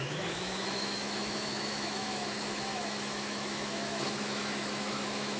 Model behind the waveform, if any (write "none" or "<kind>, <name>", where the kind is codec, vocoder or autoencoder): autoencoder, DAC-VAE